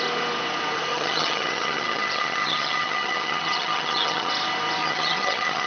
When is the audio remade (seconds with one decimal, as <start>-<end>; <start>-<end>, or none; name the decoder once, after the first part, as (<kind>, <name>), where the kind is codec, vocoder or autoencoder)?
0.9-4.3 (vocoder, HiFi-GAN); 4.8-5.7